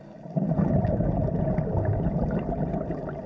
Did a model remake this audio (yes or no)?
no